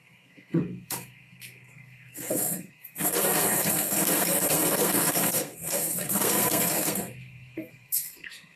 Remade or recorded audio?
remade